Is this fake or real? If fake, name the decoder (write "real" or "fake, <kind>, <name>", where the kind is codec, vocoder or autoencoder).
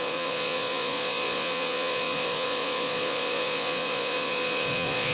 fake, vocoder, Vocos